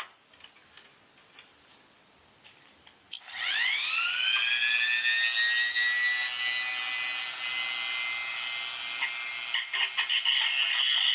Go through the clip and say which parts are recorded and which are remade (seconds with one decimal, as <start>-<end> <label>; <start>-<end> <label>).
0.0-11.1 recorded